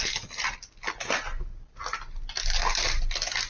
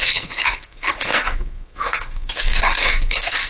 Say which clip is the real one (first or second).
first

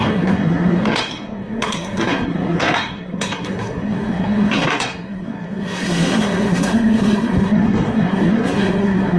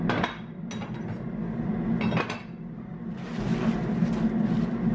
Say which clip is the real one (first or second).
second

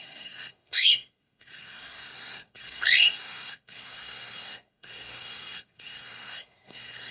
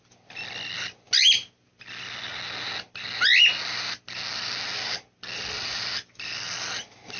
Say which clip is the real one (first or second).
second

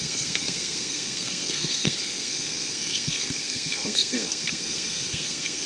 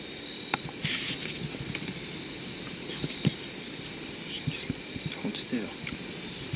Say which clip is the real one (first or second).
second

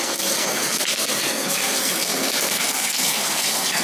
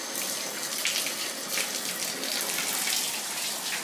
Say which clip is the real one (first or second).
second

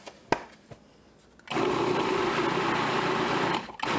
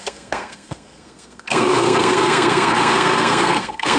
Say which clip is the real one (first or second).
first